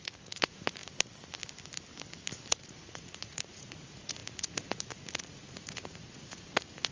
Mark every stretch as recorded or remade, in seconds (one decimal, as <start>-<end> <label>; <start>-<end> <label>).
0.0-0.8 remade; 0.8-2.5 recorded; 2.5-6.9 remade